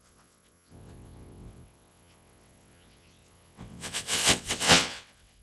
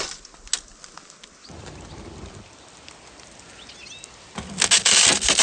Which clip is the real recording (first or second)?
second